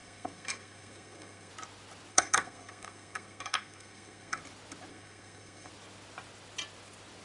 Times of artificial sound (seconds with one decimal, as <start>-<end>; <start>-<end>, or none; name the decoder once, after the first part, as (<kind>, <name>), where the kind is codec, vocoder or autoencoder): 0.0-1.5 (codec, SNAC); 2.1-4.4; 4.9-5.7